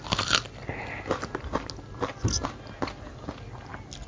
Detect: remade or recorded recorded